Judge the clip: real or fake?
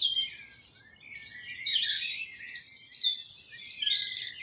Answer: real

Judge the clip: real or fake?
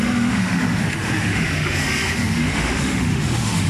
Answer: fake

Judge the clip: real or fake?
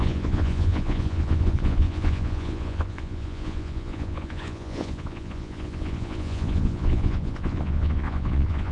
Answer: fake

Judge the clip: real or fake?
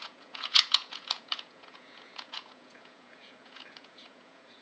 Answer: fake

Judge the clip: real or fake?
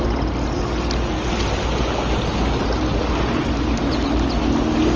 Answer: real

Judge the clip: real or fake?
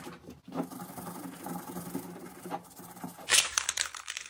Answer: fake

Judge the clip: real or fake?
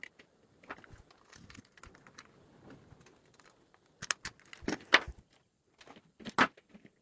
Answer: real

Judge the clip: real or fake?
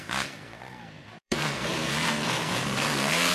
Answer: fake